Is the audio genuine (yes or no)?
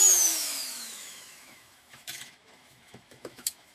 no